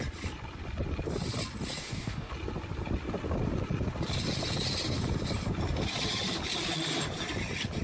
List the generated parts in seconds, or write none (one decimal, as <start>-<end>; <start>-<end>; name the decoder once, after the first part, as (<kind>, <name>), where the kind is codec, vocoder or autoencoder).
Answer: 1.8-2.3 (codec, DAC)